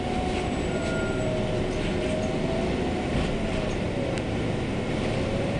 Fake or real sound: real